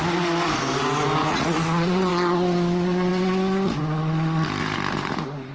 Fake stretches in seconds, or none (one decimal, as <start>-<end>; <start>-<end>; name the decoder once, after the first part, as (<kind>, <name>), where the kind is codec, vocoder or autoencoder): 1.2-2.1 (vocoder, Vocos)